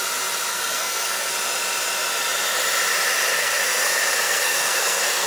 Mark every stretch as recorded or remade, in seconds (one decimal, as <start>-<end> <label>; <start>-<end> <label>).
0.0-0.5 recorded; 0.5-1.3 remade; 1.3-3.3 recorded; 3.3-5.3 remade